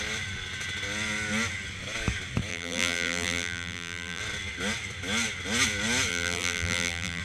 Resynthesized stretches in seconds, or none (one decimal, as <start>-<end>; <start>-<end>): 2.5-4.2; 6.1-7.2